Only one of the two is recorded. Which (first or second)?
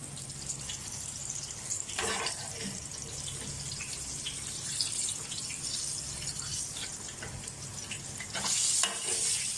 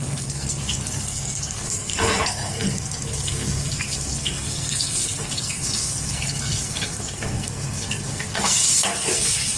first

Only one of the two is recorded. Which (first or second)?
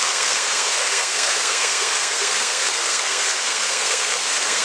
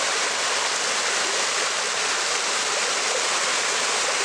second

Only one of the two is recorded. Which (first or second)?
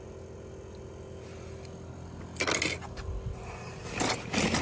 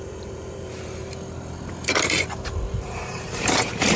first